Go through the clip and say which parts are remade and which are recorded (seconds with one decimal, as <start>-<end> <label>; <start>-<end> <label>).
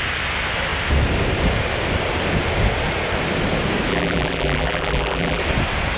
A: 0.0-3.9 recorded; 3.9-5.4 remade; 5.4-6.0 recorded